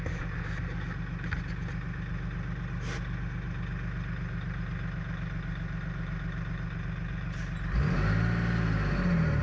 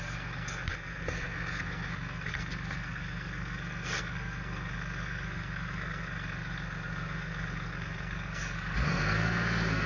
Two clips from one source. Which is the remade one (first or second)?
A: second